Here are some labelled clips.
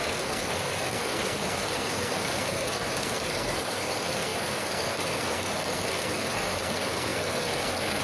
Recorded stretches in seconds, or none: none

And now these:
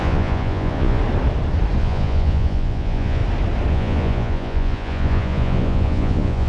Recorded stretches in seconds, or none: 1.0-1.8; 3.2-3.7

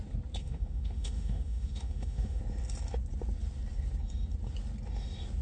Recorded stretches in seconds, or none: 0.0-0.4; 2.4-5.4

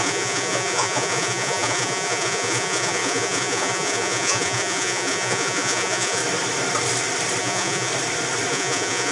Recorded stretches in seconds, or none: 6.2-7.4; 7.9-8.5

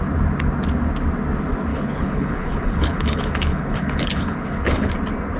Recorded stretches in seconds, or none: 0.0-1.7; 4.9-5.4

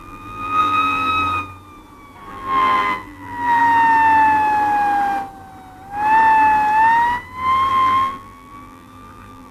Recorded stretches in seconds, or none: 1.1-2.3; 3.6-7.7

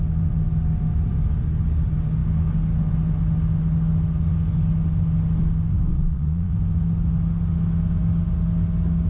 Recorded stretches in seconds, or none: 0.0-5.9; 6.5-9.1

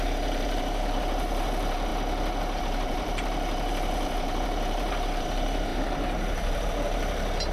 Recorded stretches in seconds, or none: 1.9-2.6